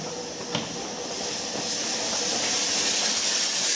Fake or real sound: real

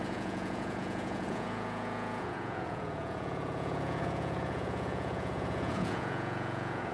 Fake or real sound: fake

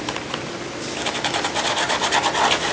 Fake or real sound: real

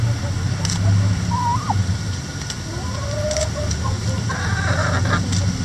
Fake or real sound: real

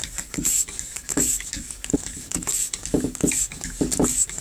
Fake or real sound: fake